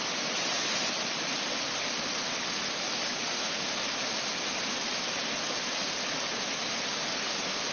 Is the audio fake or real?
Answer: real